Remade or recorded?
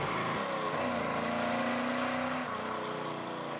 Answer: recorded